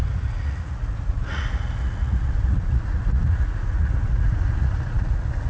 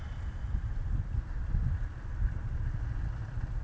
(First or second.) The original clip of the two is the second